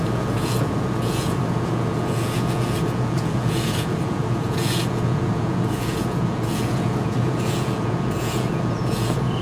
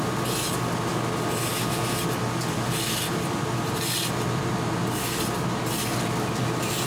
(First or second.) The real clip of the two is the second